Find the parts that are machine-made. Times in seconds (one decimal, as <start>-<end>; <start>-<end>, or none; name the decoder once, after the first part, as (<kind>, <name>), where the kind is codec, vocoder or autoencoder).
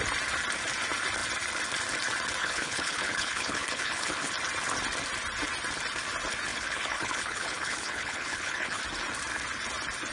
2.4-4.3 (codec, HILCodec); 6.5-8.8